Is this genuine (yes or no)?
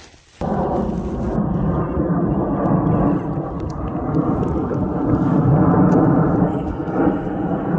yes